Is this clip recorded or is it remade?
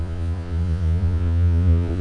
remade